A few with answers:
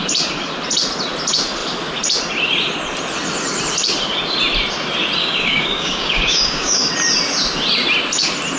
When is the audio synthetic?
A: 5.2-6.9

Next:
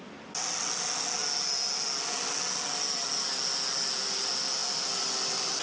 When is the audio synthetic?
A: none

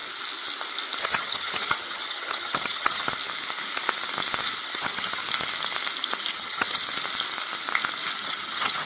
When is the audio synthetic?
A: 1.0-3.1; 4.6-5.2; 6.3-6.8; 8.2-8.9

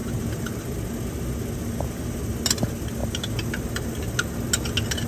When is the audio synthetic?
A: none

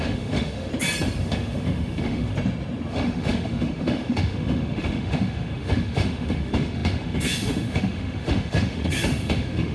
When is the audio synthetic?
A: 0.0-0.7; 1.2-2.3; 2.9-9.7

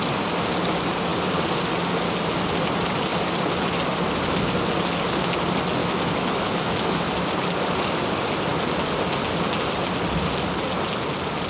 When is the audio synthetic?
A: 5.8-7.0